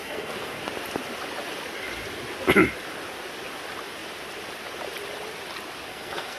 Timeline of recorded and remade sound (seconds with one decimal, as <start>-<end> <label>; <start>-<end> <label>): 0.0-0.6 remade; 0.6-5.9 recorded; 5.9-6.4 remade